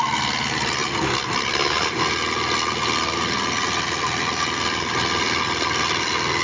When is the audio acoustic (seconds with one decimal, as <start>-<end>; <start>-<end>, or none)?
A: 0.0-6.4